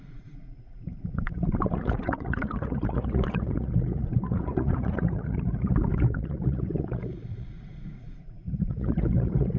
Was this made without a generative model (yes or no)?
no